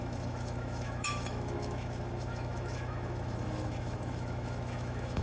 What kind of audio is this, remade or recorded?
remade